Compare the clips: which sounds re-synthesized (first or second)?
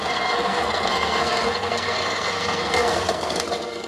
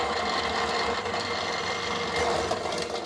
first